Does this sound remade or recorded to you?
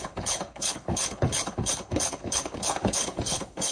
remade